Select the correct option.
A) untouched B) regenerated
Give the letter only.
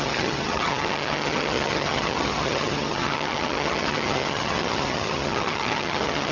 B